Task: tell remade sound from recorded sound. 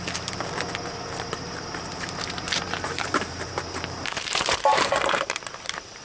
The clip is remade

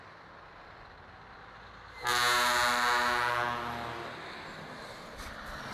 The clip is recorded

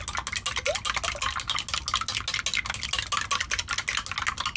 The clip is recorded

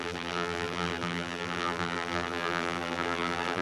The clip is remade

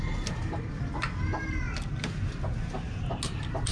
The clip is recorded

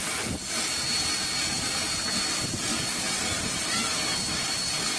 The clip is recorded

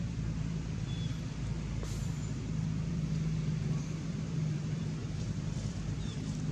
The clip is remade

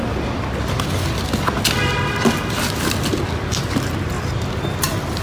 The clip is recorded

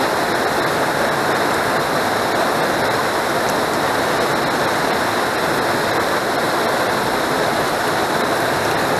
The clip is recorded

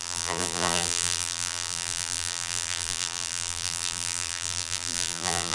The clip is remade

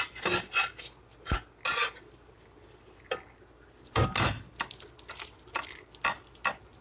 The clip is recorded